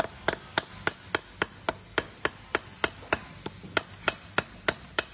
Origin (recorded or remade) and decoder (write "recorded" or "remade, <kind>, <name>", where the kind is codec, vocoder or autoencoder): recorded